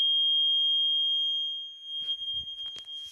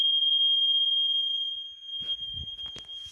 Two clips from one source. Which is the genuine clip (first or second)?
first